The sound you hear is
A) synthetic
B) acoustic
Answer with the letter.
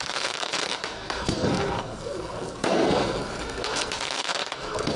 A